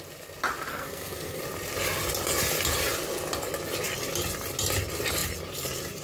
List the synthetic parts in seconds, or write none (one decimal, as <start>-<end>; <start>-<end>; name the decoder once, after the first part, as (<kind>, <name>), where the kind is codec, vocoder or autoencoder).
0.7-1.4 (codec, SNAC)